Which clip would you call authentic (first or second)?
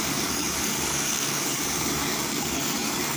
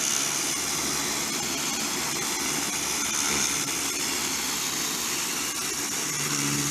second